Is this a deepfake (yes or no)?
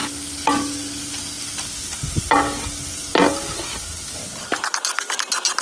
no